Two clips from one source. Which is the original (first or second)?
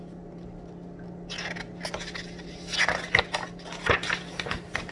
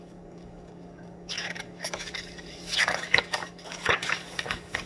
first